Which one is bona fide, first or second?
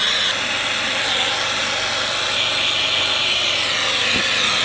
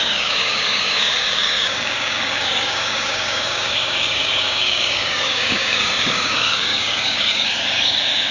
first